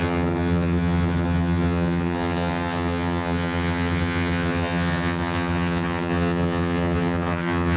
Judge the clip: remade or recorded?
remade